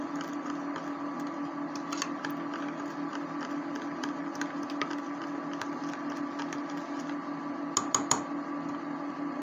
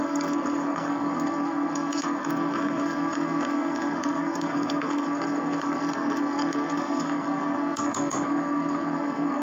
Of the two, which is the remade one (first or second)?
second